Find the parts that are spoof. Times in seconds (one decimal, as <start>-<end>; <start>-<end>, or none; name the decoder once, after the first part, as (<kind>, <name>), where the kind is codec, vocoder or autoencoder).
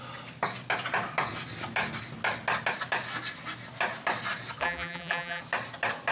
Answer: 4.6-5.4 (vocoder, BigVGAN v2)